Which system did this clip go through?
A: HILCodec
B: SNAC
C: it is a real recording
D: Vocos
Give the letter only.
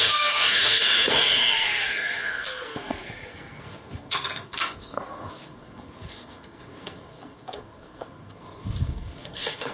B